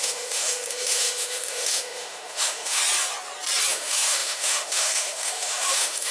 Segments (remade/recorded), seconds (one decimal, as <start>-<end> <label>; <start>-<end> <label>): 0.0-2.8 remade; 2.8-3.7 recorded; 3.7-6.1 remade